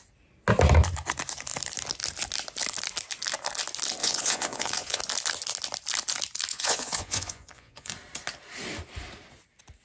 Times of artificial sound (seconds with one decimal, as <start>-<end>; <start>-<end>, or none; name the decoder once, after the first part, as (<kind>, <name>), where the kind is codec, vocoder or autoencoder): 4.0-5.0 (vocoder, Vocos); 6.5-7.9